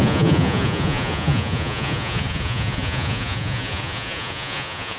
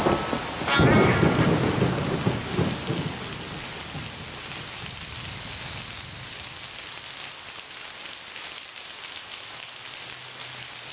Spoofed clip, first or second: first